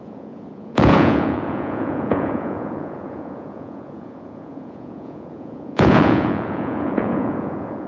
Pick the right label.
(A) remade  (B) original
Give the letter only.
A